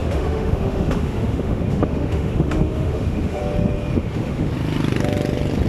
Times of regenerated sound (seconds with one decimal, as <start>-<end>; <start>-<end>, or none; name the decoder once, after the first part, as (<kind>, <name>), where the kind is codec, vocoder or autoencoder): 0.0-3.4 (autoencoder, DAC-VAE); 4.0-4.5